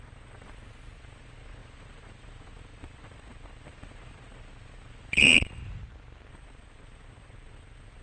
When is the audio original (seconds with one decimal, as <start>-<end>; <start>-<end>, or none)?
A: 5.6-6.3